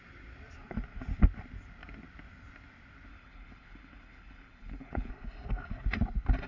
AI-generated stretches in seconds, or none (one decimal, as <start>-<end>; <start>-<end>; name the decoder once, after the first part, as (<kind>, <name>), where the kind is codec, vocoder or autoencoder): 3.1-5.1 (codec, HILCodec)

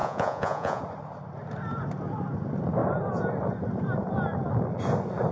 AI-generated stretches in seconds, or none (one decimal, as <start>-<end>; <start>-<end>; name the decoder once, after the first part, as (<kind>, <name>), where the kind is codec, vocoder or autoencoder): 0.0-0.8 (vocoder, Vocos)

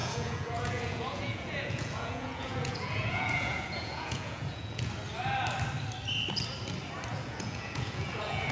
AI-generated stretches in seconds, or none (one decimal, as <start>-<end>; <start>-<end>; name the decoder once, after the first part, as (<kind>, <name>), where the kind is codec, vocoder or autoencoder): 0.0-4.9 (vocoder, Vocos); 7.1-8.5

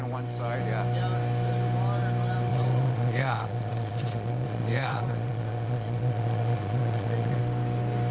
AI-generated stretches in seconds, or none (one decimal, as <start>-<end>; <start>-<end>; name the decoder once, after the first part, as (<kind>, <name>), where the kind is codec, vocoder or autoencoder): 2.5-7.4 (vocoder, Vocos)

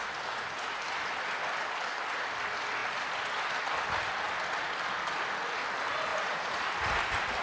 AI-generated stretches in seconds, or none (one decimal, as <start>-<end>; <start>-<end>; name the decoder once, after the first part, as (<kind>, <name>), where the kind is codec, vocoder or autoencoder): 6.1-7.4 (vocoder, BigVGAN v2)